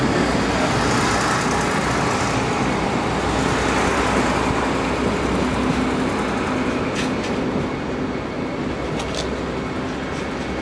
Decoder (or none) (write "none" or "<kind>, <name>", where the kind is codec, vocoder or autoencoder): none